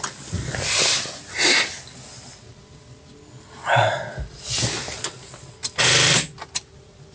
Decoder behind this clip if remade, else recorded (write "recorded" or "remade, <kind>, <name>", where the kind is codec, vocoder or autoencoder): recorded